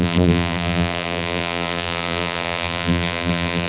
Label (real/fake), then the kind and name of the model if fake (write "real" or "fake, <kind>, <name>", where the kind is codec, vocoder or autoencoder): fake, vocoder, BigVGAN v2